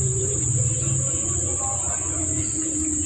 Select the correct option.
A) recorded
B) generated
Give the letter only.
A